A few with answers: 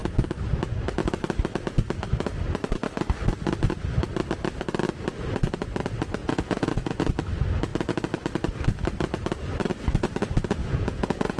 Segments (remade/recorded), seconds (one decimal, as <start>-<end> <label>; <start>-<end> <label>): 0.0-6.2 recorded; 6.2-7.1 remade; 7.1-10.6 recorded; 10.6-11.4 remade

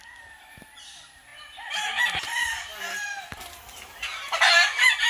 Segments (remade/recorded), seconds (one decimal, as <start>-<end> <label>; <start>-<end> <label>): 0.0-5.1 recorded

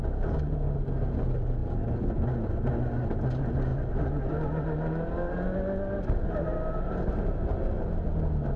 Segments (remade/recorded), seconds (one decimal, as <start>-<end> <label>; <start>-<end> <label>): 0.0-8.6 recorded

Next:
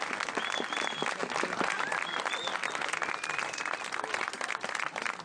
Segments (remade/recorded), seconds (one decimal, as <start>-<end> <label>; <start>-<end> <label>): 0.0-5.2 recorded